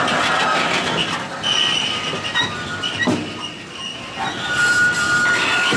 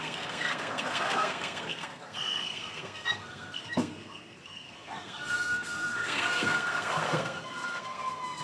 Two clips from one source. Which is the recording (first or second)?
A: first